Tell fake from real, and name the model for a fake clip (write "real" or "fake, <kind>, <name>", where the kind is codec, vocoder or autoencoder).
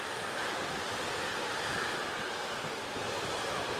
real